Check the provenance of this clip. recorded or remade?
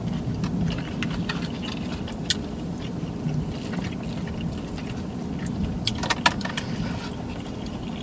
recorded